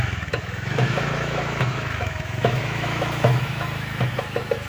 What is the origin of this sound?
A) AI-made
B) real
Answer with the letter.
A